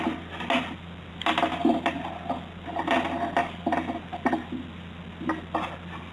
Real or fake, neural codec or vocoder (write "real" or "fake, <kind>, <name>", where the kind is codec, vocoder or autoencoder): real